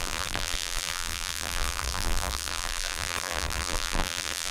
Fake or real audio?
fake